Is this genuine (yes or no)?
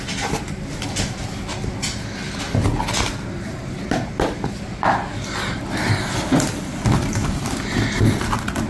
yes